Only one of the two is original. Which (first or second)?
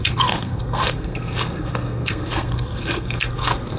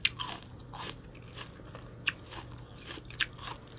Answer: second